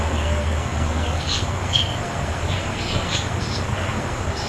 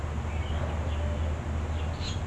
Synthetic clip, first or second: first